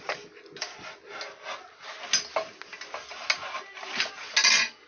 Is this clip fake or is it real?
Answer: real